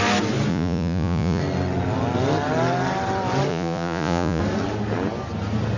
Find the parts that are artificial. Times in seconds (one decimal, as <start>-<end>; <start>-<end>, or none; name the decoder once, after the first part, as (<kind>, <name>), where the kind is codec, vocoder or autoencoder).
0.5-1.4 (vocoder, Vocos); 3.5-4.4